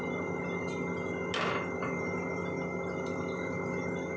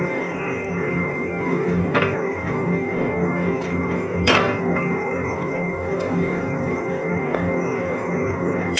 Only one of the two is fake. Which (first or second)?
second